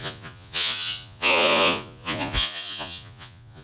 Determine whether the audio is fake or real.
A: fake